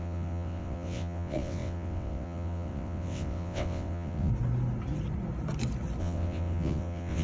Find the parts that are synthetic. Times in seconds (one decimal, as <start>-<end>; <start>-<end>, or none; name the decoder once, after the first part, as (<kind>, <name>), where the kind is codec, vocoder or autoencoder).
0.0-4.3 (vocoder, WaveNeXt); 6.0-7.2